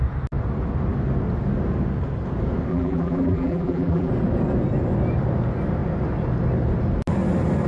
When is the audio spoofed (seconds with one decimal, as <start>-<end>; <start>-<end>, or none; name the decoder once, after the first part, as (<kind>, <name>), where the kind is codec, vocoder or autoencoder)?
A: 2.7-4.1 (vocoder, BigVGAN v2)